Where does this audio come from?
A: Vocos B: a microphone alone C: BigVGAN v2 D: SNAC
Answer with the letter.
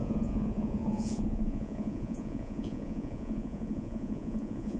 A